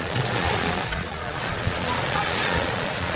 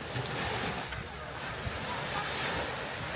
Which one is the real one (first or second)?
second